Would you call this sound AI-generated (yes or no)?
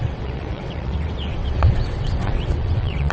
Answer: yes